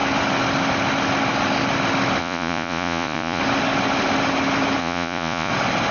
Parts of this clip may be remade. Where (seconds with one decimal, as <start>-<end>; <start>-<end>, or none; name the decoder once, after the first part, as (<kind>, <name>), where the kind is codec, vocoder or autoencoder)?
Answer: 2.2-3.4 (vocoder, Vocos); 4.8-5.5